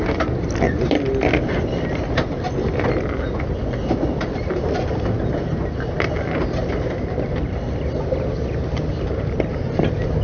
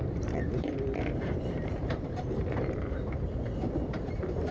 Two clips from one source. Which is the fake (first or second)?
second